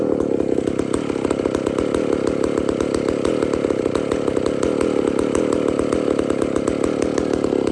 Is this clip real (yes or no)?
yes